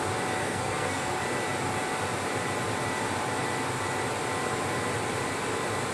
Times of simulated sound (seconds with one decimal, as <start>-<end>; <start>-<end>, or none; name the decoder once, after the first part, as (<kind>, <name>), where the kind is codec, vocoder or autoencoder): 0.4-1.1 (codec, SNAC)